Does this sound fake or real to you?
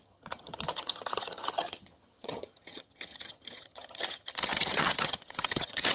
fake